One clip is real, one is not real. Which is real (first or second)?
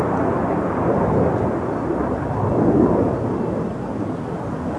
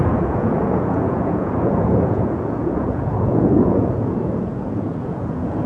first